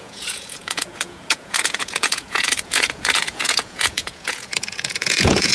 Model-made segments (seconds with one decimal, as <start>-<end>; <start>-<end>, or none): 0.0-5.5